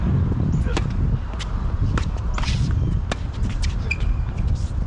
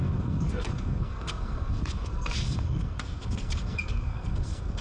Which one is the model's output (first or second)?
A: second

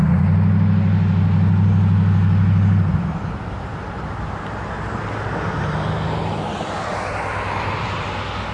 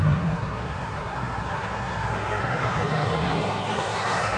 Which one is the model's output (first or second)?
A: second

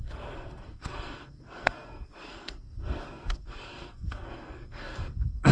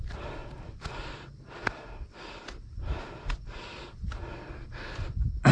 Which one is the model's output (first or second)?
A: first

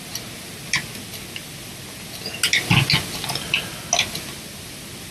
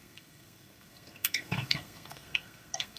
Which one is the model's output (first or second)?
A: second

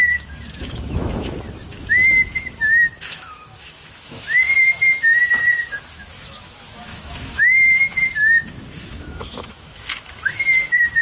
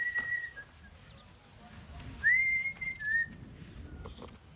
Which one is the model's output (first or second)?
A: first